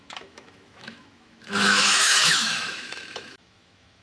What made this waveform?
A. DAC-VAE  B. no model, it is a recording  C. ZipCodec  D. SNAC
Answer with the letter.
A